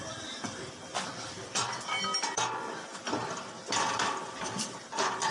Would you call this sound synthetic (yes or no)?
yes